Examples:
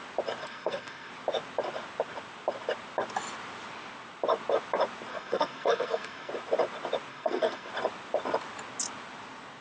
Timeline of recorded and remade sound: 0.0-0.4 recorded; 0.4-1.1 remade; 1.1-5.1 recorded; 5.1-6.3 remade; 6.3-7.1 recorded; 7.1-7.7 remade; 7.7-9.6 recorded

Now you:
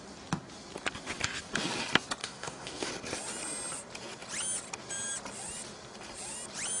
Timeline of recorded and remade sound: 0.0-2.2 recorded; 2.2-2.9 remade; 2.9-6.8 recorded

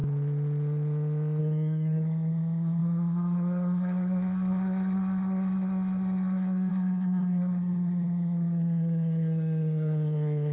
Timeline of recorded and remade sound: 0.0-1.4 recorded; 1.4-10.5 remade